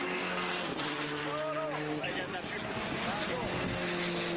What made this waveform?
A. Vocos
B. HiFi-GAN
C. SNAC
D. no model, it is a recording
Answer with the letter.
D